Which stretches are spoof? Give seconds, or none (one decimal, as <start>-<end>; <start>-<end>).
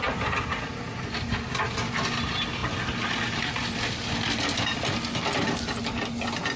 none